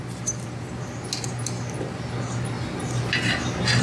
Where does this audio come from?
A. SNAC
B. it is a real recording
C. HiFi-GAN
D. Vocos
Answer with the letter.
B